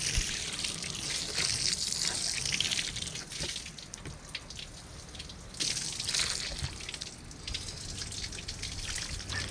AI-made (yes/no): no